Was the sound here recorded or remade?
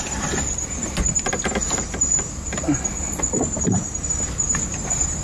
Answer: remade